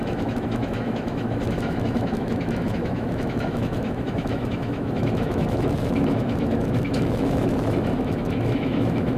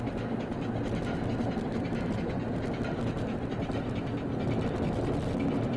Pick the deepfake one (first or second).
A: first